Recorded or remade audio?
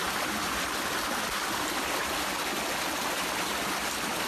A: recorded